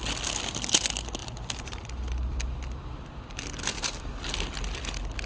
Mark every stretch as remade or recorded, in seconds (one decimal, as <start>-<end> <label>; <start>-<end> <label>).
0.0-1.2 recorded; 1.2-4.0 remade; 4.0-5.3 recorded